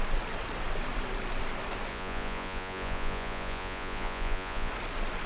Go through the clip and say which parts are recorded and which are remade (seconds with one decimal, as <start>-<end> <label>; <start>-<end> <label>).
0.0-1.9 recorded; 1.9-4.7 remade; 4.7-5.3 recorded